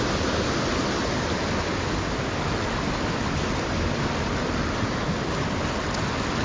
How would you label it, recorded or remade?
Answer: recorded